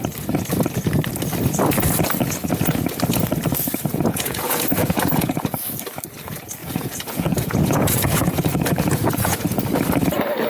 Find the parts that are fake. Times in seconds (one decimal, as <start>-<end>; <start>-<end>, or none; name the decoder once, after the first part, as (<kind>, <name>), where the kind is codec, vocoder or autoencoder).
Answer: 3.9-5.4 (vocoder, Vocos); 6.6-9.6